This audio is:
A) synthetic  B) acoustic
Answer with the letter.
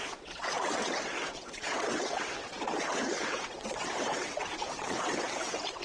A